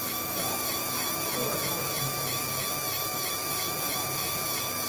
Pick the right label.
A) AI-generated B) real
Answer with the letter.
A